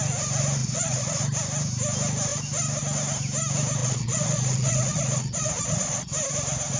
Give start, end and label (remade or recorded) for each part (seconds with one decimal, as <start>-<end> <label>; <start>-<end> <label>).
0.0-0.6 recorded; 0.6-1.2 remade; 1.2-3.8 recorded; 3.8-6.1 remade; 6.1-6.8 recorded